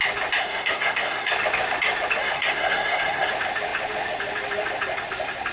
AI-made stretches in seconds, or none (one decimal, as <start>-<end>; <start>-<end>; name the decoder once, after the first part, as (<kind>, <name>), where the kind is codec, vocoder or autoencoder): 0.4-1.3 (codec, SNAC); 2.2-3.3